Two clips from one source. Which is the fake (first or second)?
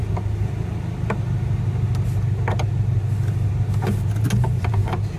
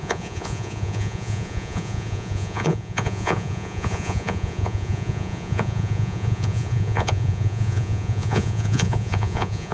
second